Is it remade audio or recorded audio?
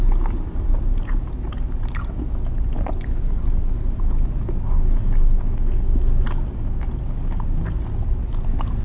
recorded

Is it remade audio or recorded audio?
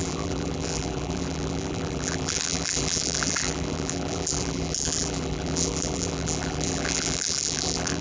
remade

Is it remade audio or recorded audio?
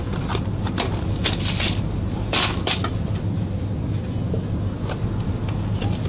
recorded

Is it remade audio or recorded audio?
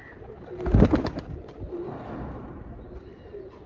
recorded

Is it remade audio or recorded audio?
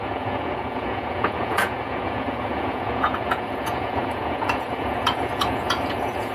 remade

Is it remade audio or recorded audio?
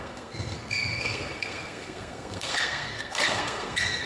remade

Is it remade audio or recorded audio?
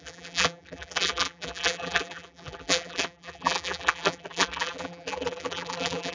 remade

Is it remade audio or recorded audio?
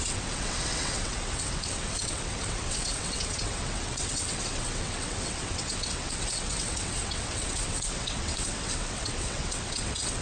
remade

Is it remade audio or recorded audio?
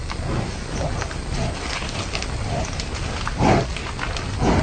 recorded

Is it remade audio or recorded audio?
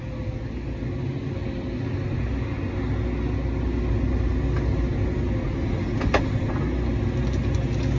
recorded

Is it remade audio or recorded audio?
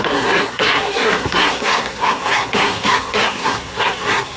remade